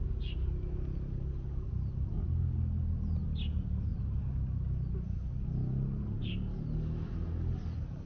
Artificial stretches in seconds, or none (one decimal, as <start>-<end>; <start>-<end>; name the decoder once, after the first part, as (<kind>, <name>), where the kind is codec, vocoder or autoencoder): none